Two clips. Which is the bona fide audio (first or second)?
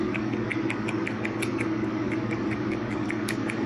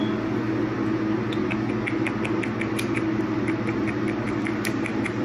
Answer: second